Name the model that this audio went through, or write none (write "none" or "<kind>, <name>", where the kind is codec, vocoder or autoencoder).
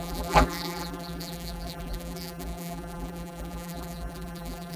vocoder, BigVGAN v2